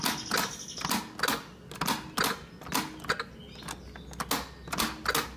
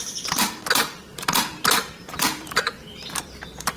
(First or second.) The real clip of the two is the first